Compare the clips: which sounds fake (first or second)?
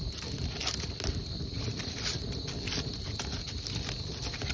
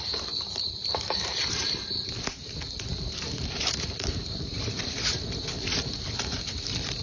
second